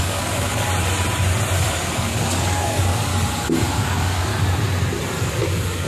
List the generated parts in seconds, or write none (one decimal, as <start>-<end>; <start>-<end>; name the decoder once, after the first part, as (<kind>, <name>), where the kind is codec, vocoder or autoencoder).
0.0-0.7 (codec, DAC); 1.7-3.1; 3.8-4.3; 5.4-5.9